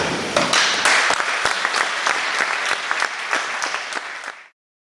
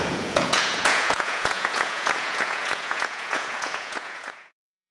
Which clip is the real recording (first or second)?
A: first